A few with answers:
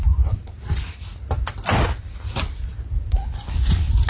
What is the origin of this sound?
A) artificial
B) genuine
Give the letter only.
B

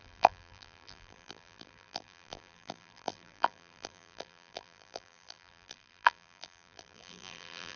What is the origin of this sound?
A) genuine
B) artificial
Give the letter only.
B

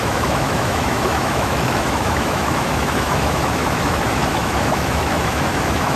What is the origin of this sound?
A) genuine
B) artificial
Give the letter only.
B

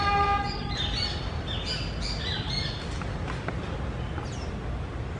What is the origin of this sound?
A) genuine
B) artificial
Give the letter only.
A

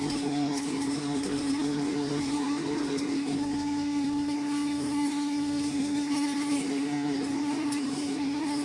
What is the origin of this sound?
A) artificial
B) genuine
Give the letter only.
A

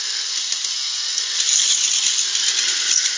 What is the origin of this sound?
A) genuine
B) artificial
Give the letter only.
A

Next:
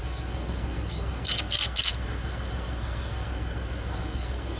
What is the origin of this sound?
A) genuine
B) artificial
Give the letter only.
B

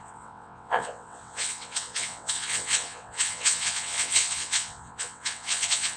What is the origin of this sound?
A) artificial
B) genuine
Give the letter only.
A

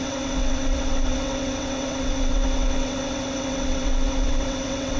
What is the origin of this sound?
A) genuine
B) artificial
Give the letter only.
B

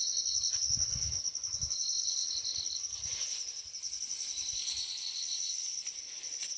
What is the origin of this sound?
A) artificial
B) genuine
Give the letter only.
B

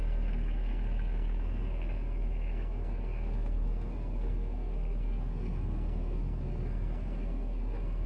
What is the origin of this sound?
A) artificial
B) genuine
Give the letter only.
A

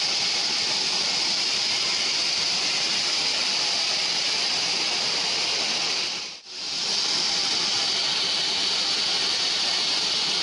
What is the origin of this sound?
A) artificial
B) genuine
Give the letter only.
A